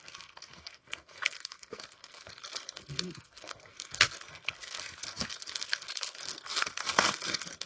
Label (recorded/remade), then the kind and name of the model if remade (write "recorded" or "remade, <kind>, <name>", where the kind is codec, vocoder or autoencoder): remade, codec, SNAC